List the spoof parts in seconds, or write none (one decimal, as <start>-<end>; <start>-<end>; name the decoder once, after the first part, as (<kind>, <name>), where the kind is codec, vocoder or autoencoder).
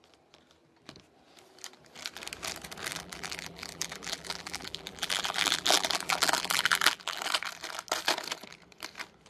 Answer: 2.9-7.2 (vocoder, BigVGAN v2)